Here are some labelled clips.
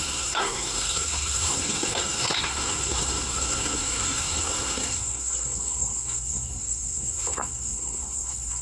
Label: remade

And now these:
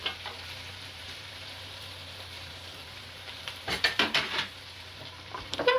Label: remade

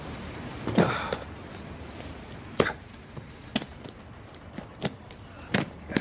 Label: remade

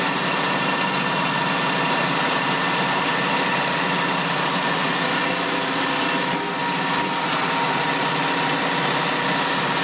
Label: recorded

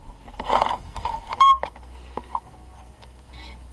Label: remade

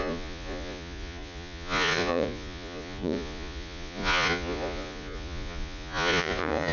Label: remade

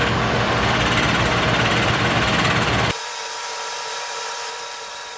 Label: recorded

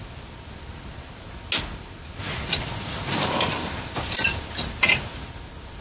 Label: recorded